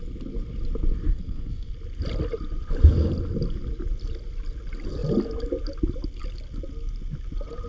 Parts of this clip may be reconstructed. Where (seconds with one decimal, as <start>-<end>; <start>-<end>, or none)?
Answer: 1.1-1.7